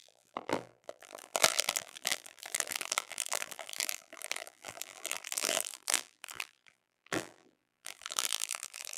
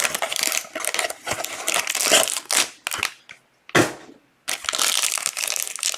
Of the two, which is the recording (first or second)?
second